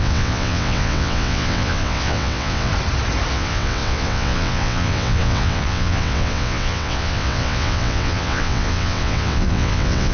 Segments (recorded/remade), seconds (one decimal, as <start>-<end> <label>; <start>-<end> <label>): 0.0-2.7 remade; 2.7-3.3 recorded; 3.3-10.1 remade